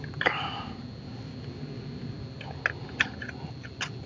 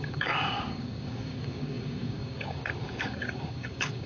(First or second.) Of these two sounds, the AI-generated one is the second